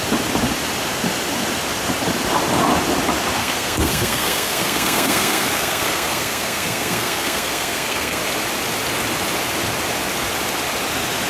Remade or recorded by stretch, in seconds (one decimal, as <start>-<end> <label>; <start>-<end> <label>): 0.0-3.4 recorded; 3.4-8.2 remade; 8.2-11.3 recorded

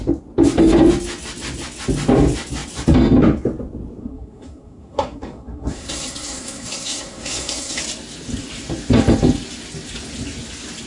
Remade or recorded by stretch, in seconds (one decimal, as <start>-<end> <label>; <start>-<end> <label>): 0.0-4.0 recorded; 4.0-7.8 remade; 7.8-10.9 recorded

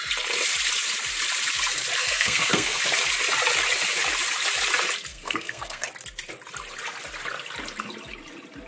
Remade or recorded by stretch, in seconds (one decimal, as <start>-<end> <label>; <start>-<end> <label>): 0.0-2.0 recorded; 2.0-2.8 remade; 2.8-5.1 recorded; 5.1-5.9 remade; 5.9-8.7 recorded

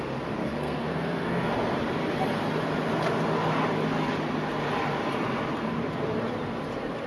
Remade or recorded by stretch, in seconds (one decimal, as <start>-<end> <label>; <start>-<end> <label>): 0.0-0.4 recorded; 0.4-1.5 remade; 1.5-7.1 recorded